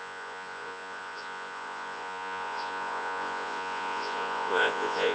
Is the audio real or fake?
fake